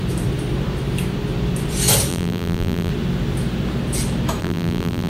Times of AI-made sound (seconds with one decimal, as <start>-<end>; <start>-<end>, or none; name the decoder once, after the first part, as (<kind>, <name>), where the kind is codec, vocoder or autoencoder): 2.1-2.9 (vocoder, BigVGAN v2); 4.4-5.1